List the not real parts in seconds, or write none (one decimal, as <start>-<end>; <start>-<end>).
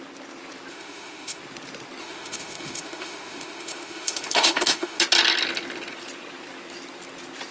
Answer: 0.7-1.4; 2.0-5.0